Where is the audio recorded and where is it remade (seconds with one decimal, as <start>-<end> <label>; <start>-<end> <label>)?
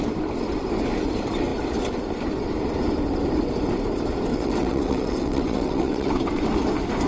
0.0-4.3 recorded; 4.3-6.1 remade; 6.1-7.1 recorded